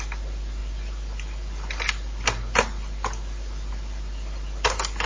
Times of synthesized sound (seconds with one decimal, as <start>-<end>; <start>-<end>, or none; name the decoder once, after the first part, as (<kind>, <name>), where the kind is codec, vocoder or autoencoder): none